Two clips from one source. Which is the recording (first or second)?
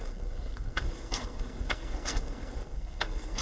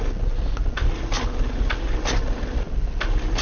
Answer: second